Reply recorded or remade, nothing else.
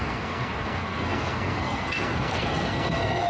remade